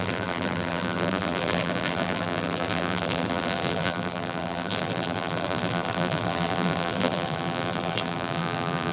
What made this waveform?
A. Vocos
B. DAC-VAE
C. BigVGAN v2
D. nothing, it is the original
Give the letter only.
C